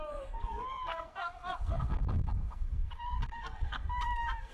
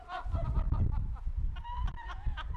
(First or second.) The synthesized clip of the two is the first